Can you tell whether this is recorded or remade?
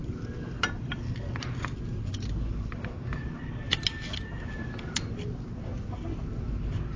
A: recorded